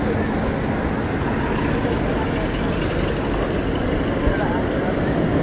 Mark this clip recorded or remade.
recorded